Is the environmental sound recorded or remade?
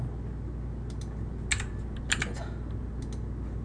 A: recorded